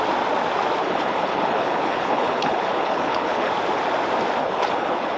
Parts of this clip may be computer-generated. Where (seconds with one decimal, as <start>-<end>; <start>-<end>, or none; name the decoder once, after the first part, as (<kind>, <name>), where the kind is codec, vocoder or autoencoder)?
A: 0.8-3.5 (codec, HILCodec); 4.4-5.2